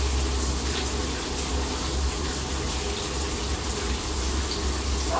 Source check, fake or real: real